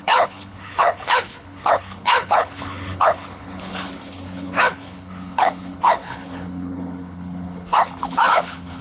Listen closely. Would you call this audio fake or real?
fake